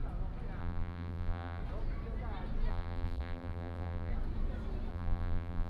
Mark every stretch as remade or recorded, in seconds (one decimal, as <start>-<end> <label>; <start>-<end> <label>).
0.0-0.6 recorded; 0.6-1.6 remade; 1.6-2.7 recorded; 2.7-4.1 remade; 4.1-4.9 recorded; 4.9-5.7 remade